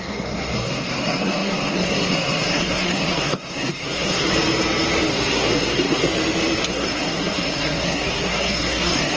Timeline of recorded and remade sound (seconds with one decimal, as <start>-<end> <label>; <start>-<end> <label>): 0.0-4.3 remade; 4.3-5.1 recorded; 5.1-6.1 remade; 6.1-6.7 recorded; 6.7-9.2 remade